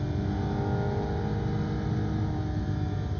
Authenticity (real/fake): real